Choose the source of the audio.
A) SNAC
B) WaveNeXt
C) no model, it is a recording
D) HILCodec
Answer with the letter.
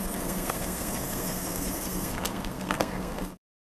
A